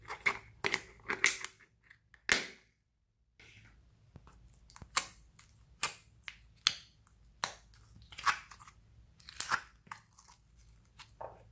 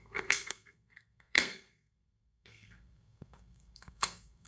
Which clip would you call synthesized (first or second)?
second